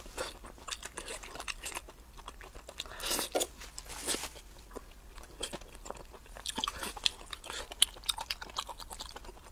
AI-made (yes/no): no